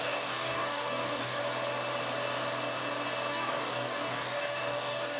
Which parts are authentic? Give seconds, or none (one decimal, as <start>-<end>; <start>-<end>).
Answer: 1.4-3.3